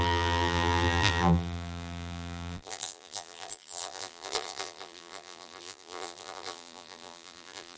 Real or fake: fake